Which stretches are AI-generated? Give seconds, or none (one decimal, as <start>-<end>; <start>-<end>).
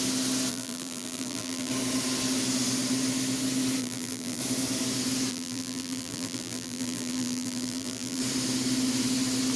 0.5-1.7; 3.8-4.4; 5.3-8.2